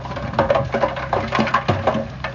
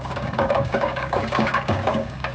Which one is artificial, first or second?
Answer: second